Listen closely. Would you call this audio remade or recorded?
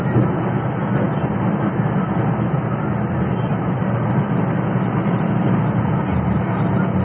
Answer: recorded